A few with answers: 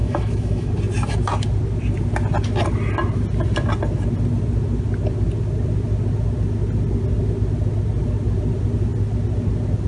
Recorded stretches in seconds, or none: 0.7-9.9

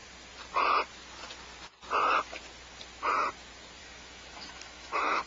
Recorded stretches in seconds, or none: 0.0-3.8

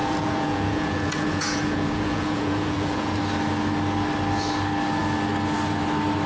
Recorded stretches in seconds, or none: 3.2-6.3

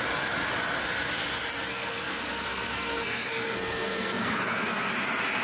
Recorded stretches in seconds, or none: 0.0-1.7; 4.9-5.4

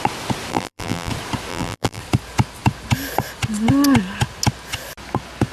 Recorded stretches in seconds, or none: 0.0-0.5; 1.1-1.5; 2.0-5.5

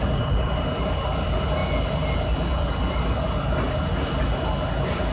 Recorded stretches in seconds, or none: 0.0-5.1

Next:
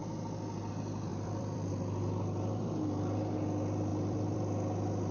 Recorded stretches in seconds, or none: 0.0-1.1; 1.7-3.9; 4.4-5.1

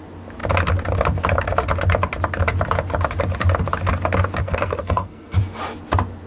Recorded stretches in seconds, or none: 0.0-4.4; 5.4-6.3